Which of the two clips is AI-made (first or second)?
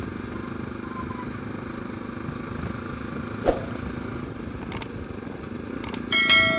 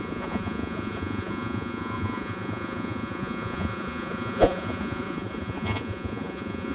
second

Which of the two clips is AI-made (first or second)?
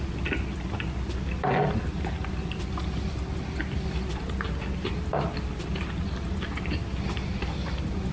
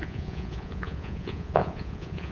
second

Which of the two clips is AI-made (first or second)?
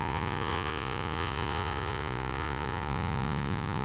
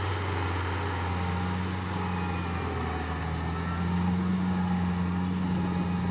first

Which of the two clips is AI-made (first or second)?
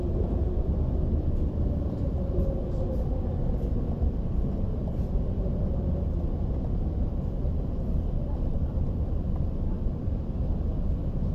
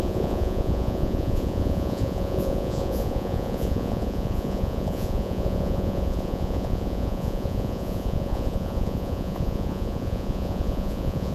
second